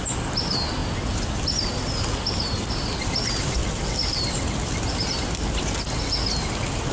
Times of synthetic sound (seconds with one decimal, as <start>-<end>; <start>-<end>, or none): none